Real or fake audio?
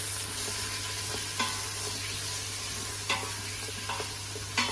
real